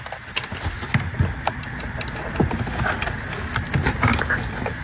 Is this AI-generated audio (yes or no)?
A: no